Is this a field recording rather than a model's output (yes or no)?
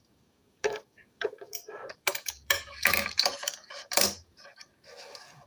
no